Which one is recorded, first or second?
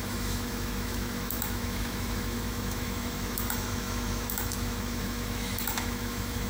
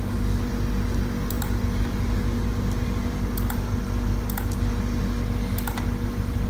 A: second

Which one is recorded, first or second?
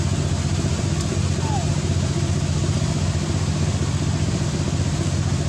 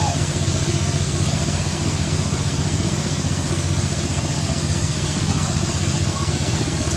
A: first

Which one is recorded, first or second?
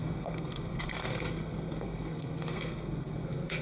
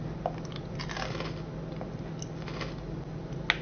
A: second